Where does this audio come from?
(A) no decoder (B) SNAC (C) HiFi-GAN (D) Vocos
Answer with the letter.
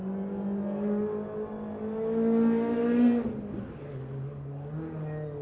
A